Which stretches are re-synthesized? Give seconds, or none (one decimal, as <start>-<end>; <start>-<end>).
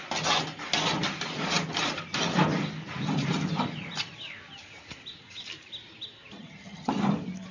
6.4-6.9